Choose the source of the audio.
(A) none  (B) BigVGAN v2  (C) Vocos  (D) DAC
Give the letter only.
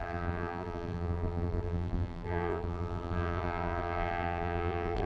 B